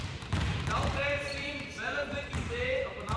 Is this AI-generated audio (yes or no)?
yes